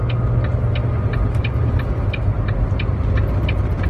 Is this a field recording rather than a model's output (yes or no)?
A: yes